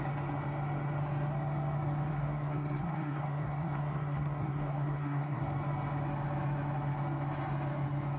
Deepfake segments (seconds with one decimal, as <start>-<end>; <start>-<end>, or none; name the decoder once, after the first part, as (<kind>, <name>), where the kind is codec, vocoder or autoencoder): 2.1-5.4 (codec, SNAC)